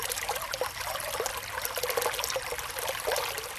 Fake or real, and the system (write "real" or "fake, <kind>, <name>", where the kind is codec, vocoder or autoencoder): real